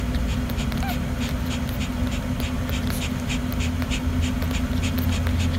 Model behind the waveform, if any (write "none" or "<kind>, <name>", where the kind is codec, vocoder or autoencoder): none